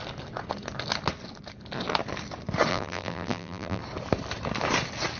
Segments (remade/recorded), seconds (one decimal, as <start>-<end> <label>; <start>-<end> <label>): 0.0-2.7 recorded; 2.7-3.8 remade; 3.8-5.2 recorded